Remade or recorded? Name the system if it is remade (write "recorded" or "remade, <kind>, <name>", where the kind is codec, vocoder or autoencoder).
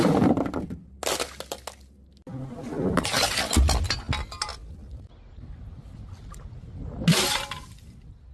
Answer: recorded